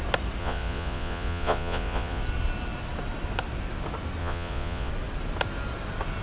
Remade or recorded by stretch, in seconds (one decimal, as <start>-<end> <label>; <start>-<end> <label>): 0.0-0.4 recorded; 0.4-2.2 remade; 2.2-4.2 recorded; 4.2-4.9 remade; 4.9-6.2 recorded